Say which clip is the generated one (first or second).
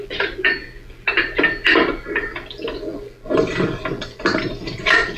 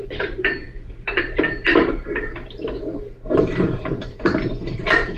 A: second